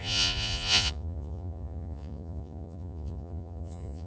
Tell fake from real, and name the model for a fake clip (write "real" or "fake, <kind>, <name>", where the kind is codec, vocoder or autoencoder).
fake, vocoder, Vocos